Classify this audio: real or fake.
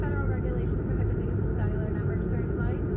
real